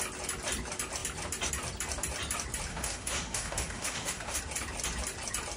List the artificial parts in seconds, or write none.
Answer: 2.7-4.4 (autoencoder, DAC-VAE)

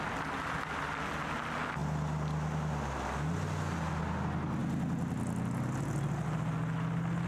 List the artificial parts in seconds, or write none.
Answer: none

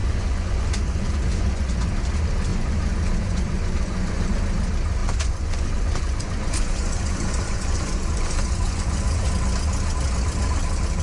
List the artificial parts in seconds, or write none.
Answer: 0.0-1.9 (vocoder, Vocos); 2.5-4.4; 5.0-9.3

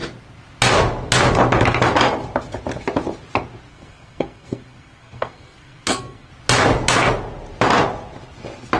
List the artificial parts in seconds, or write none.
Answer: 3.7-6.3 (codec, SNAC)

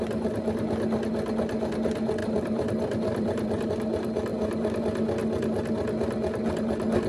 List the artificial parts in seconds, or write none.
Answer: 2.2-3.7 (vocoder, BigVGAN v2); 4.3-4.8